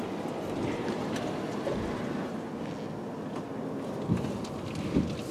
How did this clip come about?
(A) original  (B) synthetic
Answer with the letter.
A